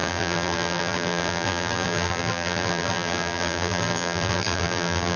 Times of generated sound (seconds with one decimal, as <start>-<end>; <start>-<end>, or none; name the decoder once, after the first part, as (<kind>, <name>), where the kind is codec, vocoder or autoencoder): 0.0-5.2 (vocoder, BigVGAN v2)